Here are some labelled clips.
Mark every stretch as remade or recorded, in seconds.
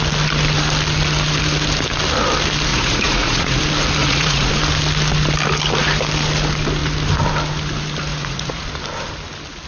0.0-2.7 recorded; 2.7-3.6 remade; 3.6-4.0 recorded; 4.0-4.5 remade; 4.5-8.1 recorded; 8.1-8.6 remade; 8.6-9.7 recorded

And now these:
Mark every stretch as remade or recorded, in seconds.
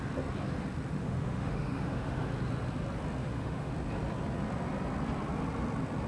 0.0-1.0 recorded; 1.0-2.3 remade; 2.3-3.2 recorded; 3.2-3.7 remade; 3.7-6.1 recorded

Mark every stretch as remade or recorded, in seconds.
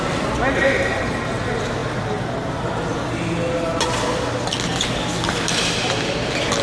0.0-0.6 recorded; 0.6-1.2 remade; 1.2-6.6 recorded